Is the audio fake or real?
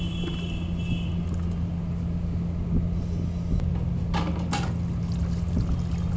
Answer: real